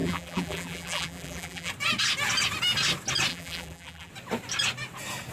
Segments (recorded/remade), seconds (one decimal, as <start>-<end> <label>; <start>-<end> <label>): 0.0-1.7 remade; 1.7-3.3 recorded; 3.3-4.1 remade; 4.1-5.3 recorded